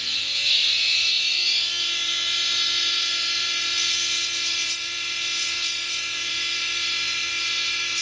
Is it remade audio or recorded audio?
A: remade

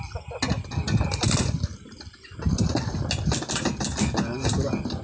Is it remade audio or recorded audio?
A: recorded